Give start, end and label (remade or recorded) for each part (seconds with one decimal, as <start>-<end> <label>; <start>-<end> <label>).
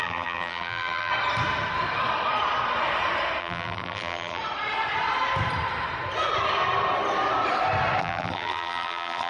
0.0-1.1 remade; 1.1-3.4 recorded; 3.4-4.4 remade; 4.4-8.0 recorded; 8.0-9.3 remade